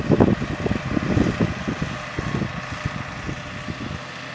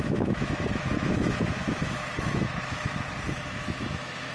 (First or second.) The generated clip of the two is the second